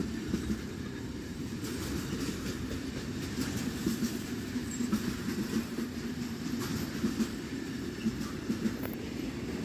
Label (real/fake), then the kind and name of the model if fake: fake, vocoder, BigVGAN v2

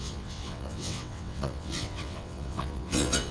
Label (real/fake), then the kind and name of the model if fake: fake, vocoder, WaveNeXt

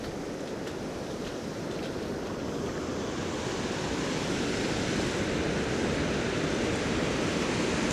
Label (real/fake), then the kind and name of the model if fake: real